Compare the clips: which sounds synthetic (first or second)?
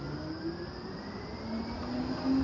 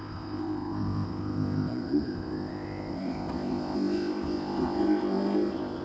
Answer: second